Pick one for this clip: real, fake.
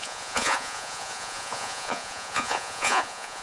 fake